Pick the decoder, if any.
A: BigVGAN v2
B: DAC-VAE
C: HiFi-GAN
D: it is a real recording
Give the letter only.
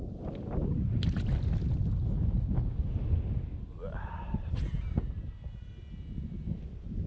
D